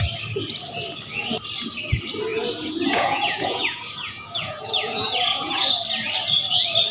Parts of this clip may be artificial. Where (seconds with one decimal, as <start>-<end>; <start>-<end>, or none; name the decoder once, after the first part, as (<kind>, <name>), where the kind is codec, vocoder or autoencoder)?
2.3-5.5 (vocoder, Vocos)